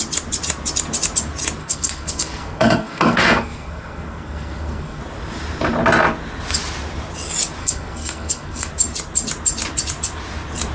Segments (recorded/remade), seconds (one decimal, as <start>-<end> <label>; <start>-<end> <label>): 0.0-1.6 recorded; 1.6-5.0 remade; 5.0-7.6 recorded; 7.6-8.7 remade; 8.7-10.7 recorded